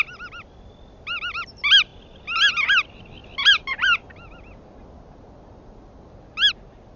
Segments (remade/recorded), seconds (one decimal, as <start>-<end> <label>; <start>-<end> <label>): 0.0-7.0 recorded